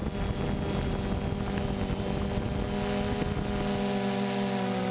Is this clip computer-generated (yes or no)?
no